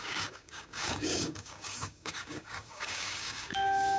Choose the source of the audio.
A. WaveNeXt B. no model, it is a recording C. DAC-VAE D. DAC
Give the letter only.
D